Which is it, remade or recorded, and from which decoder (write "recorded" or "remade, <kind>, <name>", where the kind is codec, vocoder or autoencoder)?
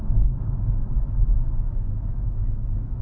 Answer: remade, autoencoder, DAC-VAE